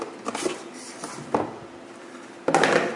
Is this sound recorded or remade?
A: recorded